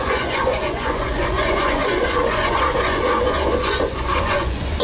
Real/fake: fake